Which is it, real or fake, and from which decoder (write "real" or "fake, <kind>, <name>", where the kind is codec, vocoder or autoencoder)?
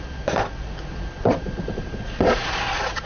fake, vocoder, Vocos